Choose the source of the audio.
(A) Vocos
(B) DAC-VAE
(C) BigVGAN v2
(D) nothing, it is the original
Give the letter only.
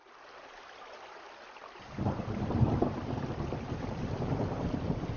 C